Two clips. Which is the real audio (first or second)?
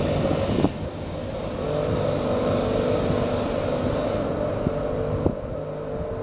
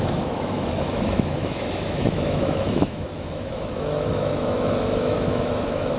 first